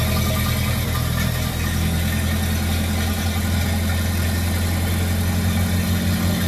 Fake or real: real